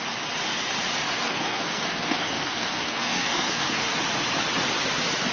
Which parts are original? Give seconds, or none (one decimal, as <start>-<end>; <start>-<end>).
0.0-1.0; 4.0-5.3